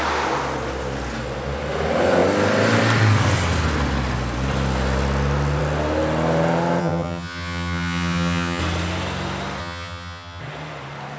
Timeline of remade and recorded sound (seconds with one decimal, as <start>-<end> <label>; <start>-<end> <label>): 0.0-6.8 recorded; 6.8-8.6 remade; 8.6-9.6 recorded; 9.6-10.4 remade; 10.4-11.2 recorded